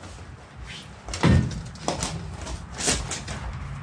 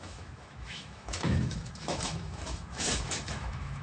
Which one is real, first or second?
first